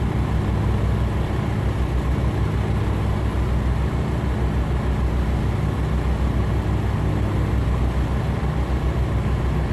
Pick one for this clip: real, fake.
real